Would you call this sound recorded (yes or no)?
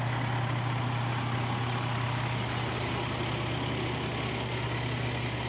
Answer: yes